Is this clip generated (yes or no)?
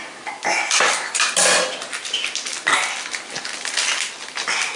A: no